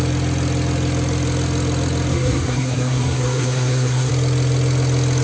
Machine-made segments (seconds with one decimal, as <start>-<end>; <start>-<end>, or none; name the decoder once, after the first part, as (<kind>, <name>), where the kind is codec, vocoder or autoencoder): 2.1-4.1 (codec, SNAC)